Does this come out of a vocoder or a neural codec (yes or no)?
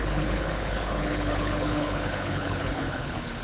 yes